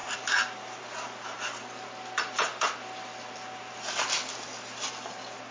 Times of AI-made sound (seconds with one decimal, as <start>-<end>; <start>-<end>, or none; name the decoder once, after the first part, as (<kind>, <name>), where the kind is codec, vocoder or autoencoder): none